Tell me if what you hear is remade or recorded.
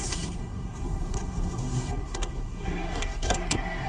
remade